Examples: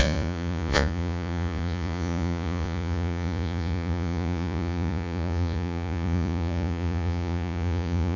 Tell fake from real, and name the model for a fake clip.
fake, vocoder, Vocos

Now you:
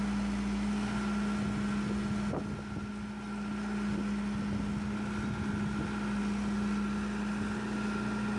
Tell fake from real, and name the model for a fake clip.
real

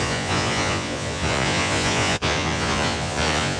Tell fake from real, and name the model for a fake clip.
fake, vocoder, Vocos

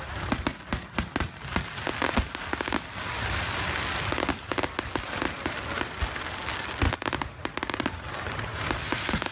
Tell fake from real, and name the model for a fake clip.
real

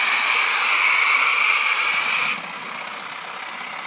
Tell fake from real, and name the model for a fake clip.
real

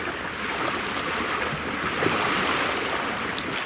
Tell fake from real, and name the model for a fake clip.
real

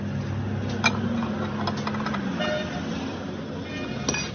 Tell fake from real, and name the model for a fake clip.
real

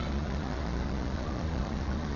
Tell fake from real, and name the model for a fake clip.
fake, vocoder, Vocos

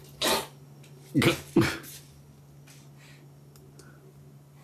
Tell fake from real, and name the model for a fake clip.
real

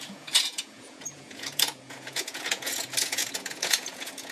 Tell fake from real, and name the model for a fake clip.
fake, vocoder, Vocos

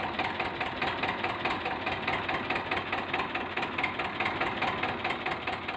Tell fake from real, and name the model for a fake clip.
real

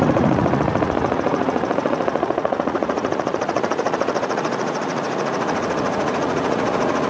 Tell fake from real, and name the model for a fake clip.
fake, vocoder, Vocos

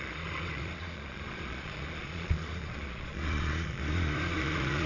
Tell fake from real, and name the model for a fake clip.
fake, vocoder, Vocos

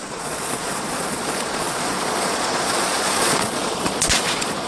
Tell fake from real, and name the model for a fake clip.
fake, vocoder, Vocos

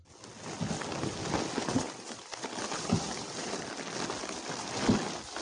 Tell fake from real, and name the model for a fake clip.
real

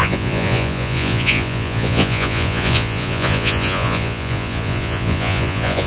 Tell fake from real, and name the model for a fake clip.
fake, vocoder, Vocos